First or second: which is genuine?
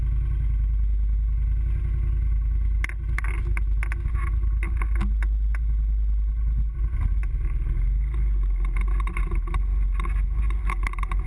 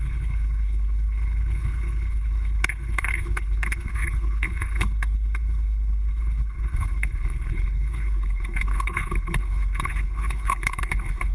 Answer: first